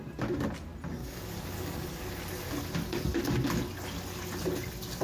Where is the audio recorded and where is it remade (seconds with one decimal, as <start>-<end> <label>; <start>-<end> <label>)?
0.0-1.0 recorded; 1.0-2.1 remade; 2.1-5.0 recorded